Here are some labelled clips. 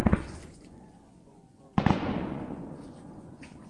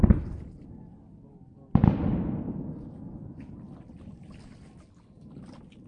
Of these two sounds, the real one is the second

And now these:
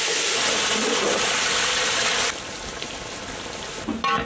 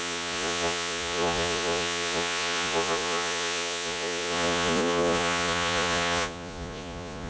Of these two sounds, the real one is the first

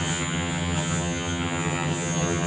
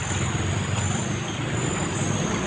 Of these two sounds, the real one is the second